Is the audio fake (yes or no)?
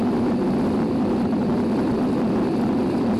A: no